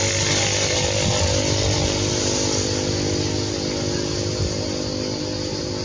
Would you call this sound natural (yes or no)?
yes